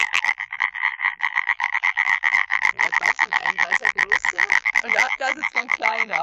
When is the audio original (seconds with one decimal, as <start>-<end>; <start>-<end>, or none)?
none